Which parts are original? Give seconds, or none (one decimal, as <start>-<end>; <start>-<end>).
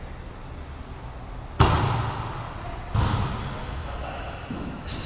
0.0-3.6